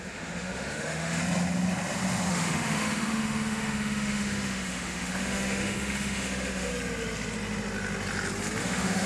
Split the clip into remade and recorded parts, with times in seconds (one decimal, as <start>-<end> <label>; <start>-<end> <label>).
0.0-1.2 remade; 1.2-2.3 recorded; 2.3-6.7 remade; 6.7-8.6 recorded; 8.6-9.1 remade